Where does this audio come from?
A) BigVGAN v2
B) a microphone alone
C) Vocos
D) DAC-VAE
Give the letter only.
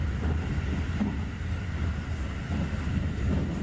B